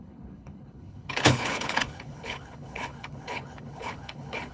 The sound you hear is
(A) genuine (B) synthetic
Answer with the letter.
B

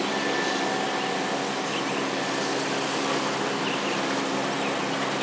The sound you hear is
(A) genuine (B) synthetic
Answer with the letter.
A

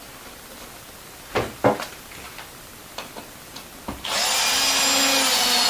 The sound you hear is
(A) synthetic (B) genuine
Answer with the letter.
B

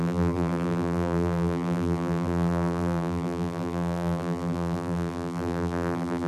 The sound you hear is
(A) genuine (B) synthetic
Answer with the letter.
B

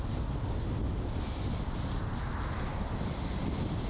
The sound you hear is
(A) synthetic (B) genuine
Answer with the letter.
B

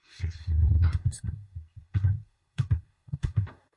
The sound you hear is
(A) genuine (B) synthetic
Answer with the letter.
B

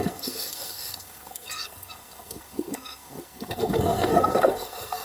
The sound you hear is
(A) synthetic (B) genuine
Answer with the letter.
A